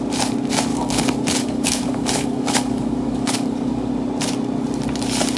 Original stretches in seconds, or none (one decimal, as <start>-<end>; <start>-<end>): 0.0-0.7; 3.9-5.4